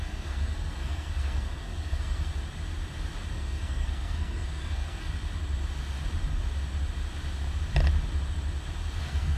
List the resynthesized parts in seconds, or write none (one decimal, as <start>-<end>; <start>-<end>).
0.0-2.3; 3.3-5.2; 9.0-9.4